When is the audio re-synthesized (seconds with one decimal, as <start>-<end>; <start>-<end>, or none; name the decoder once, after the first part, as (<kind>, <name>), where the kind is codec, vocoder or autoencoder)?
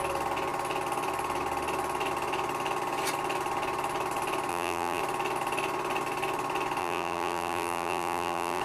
4.5-5.0 (vocoder, BigVGAN v2); 6.8-8.6